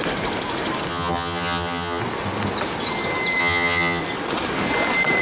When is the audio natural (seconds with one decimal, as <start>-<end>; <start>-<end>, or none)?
0.0-0.9; 2.0-3.4; 4.0-5.2